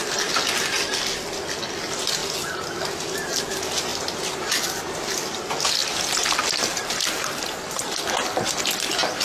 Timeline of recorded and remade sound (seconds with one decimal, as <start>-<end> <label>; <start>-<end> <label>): 0.0-9.2 recorded